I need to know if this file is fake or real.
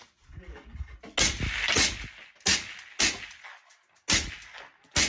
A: real